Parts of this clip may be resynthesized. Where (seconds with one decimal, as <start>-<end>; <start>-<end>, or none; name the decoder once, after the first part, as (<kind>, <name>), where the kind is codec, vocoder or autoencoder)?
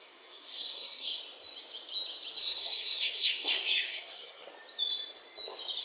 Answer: 0.0-1.2 (codec, SNAC); 2.4-4.5